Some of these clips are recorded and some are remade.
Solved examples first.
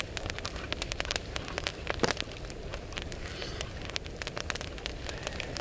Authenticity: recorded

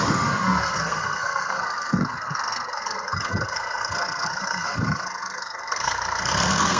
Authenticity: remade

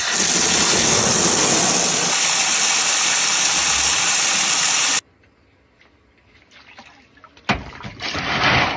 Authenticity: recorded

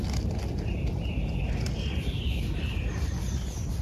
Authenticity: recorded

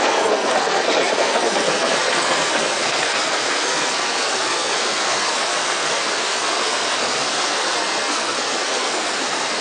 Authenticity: remade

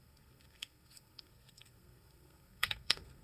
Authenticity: remade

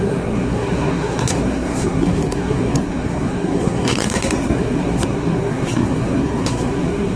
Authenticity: remade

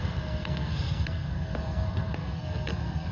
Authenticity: remade